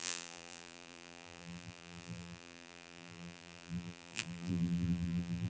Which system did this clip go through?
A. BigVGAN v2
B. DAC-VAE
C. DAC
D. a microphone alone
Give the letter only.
A